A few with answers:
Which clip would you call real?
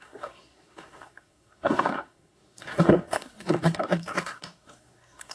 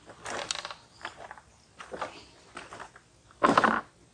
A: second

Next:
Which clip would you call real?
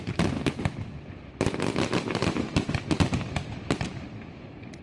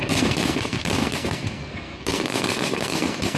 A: first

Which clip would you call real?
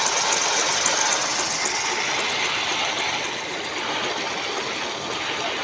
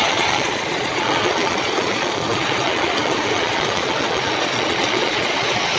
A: first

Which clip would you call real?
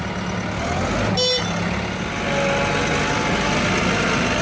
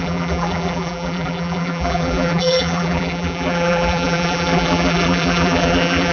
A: first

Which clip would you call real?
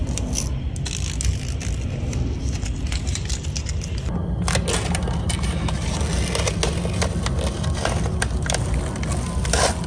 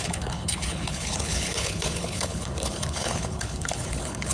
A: first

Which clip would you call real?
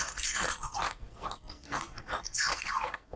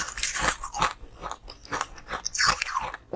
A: second